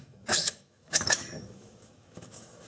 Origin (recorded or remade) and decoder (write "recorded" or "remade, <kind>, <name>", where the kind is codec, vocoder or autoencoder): remade, autoencoder, DAC-VAE